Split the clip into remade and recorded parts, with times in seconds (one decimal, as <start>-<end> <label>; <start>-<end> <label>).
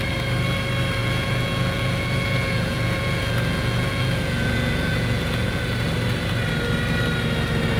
0.0-1.0 recorded; 1.0-5.6 remade; 5.6-7.8 recorded